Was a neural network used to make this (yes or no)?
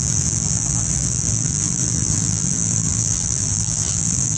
yes